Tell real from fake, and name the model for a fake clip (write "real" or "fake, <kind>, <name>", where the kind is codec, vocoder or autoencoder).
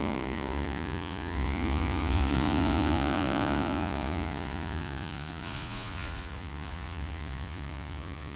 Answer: fake, vocoder, Vocos